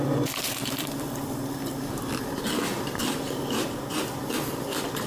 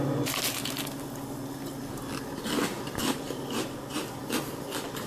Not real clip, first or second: first